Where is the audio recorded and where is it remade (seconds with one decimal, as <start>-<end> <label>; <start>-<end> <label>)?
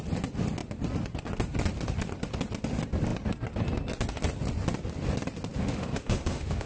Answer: 0.0-5.6 recorded; 5.6-6.7 remade